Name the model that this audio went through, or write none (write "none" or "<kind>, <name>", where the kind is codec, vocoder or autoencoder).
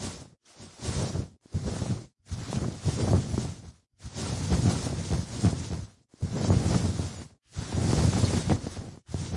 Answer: vocoder, Vocos